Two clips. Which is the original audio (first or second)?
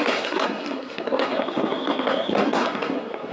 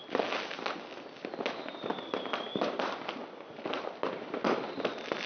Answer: second